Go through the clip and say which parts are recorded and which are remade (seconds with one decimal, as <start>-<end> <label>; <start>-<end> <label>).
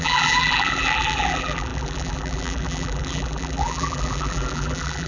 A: 0.0-5.1 remade